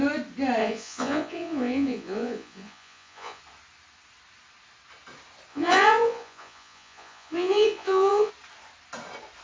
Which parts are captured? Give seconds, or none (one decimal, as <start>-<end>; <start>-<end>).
0.0-0.6; 3.4-5.5; 8.3-9.4